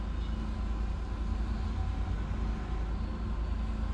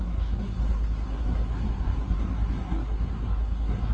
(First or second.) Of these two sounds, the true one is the first